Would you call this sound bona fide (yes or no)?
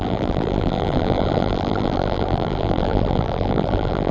no